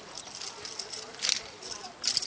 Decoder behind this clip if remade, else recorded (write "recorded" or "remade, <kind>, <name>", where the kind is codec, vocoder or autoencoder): recorded